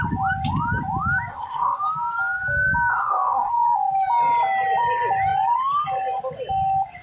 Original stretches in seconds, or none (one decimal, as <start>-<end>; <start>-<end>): 0.0-1.3; 1.8-2.9; 3.5-7.0